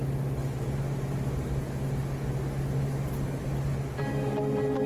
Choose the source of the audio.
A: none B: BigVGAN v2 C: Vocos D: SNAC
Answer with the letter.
A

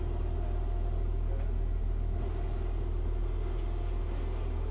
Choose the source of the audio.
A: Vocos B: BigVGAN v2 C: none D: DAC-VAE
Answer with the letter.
C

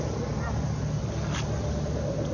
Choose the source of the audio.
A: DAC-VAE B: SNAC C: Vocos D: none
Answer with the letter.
D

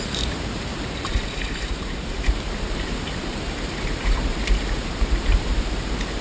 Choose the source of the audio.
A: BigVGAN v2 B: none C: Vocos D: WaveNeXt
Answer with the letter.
A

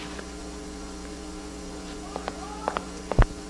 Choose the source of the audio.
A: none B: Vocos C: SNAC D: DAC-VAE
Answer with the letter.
B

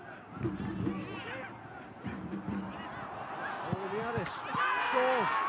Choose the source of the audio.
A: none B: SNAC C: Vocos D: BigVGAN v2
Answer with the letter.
A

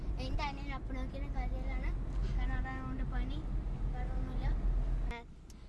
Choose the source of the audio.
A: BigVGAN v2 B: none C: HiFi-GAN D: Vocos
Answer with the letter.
B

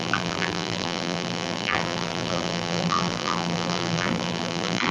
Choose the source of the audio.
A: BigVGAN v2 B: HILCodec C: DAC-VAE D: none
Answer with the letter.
A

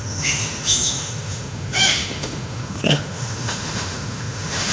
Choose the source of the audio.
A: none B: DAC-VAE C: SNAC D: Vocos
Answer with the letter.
B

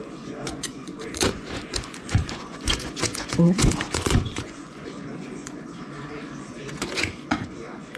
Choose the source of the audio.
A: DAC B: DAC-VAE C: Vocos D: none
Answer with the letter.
C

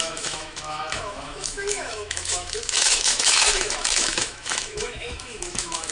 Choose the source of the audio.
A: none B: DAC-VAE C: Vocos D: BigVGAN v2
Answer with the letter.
B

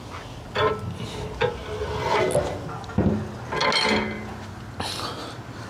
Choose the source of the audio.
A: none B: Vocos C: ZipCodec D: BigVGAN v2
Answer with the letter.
A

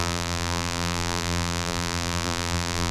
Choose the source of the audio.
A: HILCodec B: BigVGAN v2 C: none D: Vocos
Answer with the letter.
B